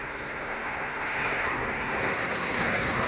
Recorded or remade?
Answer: remade